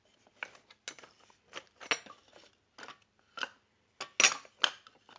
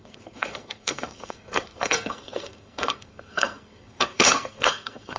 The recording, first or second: first